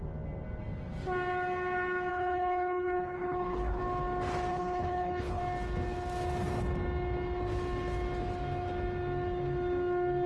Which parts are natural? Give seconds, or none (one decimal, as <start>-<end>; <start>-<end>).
0.0-2.1; 3.8-4.5; 5.4-10.3